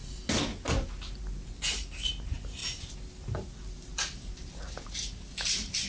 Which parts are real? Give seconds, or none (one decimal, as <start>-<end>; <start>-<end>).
0.0-2.6; 4.5-5.9